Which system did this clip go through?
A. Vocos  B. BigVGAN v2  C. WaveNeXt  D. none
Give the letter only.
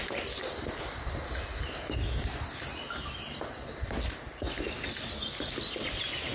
D